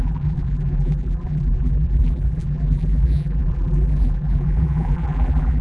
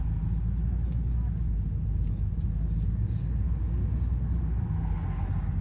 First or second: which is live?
second